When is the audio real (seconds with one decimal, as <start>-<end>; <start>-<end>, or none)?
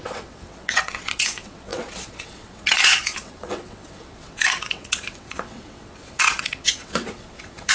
none